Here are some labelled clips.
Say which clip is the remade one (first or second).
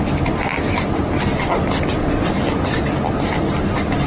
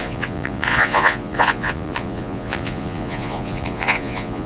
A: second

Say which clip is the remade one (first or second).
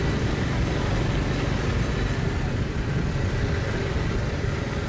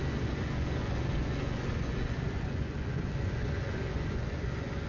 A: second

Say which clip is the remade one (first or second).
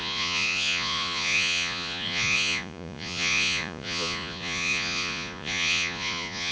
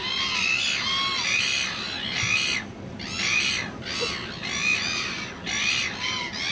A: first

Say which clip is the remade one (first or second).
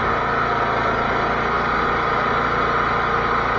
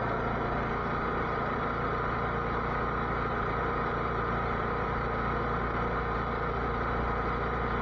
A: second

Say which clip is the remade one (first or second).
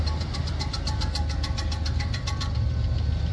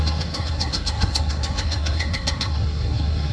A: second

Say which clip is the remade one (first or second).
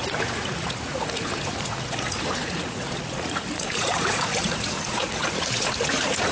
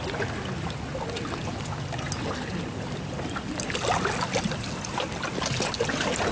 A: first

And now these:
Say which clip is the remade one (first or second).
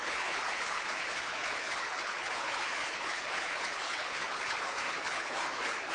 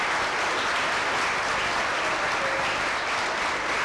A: first